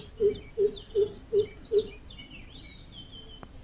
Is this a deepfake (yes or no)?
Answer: no